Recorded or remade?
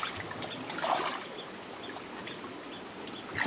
recorded